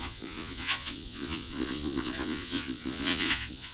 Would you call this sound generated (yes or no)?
yes